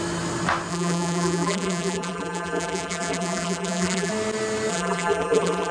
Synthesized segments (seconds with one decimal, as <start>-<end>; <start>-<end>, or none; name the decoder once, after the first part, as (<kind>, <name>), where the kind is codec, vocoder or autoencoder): 0.7-4.1 (vocoder, BigVGAN v2); 4.7-5.7